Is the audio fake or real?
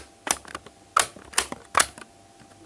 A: real